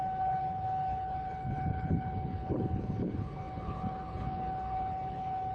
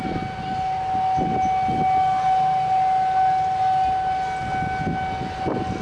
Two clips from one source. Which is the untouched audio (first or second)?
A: second